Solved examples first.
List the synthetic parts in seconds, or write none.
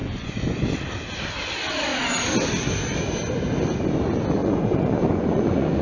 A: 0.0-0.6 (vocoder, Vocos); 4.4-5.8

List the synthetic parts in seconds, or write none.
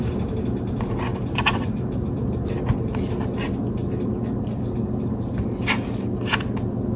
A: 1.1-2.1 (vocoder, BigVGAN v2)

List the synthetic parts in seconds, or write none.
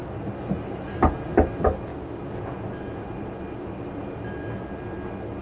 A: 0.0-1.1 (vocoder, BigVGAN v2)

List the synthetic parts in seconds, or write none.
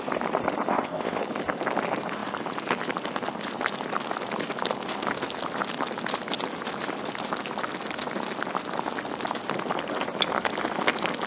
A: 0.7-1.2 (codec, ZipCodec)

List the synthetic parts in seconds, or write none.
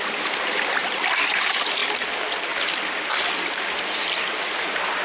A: 0.0-0.8 (vocoder, BigVGAN v2); 1.4-5.0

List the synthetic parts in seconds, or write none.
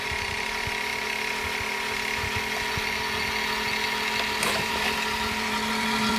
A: 0.0-0.9 (vocoder, BigVGAN v2); 4.4-6.2